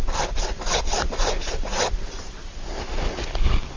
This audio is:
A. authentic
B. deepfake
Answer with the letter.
B